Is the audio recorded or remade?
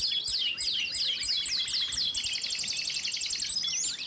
recorded